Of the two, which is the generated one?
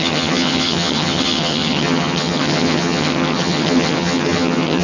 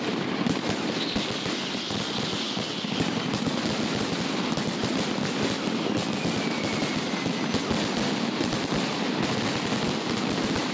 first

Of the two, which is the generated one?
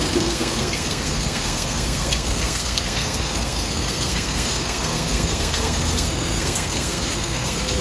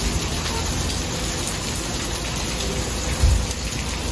first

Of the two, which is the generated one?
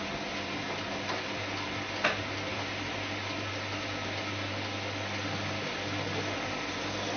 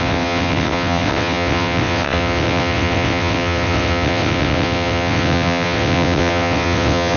second